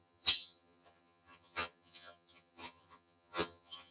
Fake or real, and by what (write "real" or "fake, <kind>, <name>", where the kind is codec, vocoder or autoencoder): fake, vocoder, HiFi-GAN